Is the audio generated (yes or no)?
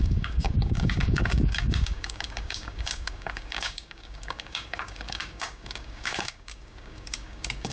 yes